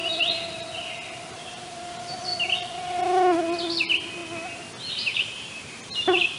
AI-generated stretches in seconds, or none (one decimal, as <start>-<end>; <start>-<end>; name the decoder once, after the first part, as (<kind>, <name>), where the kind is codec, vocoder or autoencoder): 1.3-2.3 (vocoder, BigVGAN v2); 3.8-4.2; 4.9-6.4

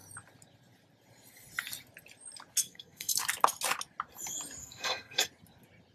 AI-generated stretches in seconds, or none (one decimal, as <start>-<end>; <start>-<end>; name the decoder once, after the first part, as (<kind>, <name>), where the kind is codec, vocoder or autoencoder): 2.6-3.2 (codec, SNAC); 4.6-5.3